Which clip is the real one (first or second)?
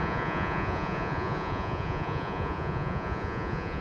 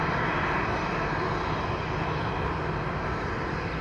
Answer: second